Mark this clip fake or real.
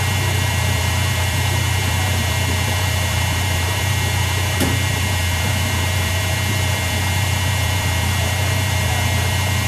fake